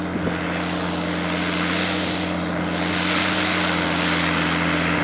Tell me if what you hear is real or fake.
real